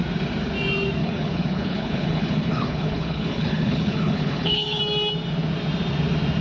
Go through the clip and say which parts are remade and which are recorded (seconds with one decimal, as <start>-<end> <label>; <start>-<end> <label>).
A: 0.0-1.0 recorded; 1.0-4.8 remade; 4.8-6.4 recorded